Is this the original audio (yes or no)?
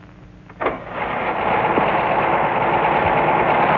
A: yes